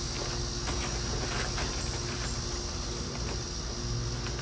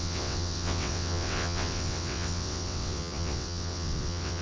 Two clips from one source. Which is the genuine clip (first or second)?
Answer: first